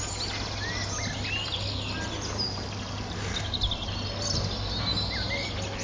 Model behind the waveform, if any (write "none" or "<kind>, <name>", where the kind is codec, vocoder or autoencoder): none